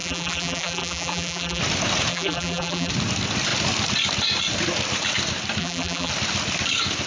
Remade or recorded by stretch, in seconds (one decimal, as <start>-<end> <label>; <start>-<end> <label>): 0.0-1.6 remade; 1.6-2.1 recorded; 2.1-2.9 remade; 2.9-5.6 recorded; 5.6-6.1 remade; 6.1-7.1 recorded